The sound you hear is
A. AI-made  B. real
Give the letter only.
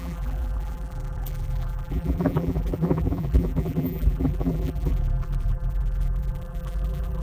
A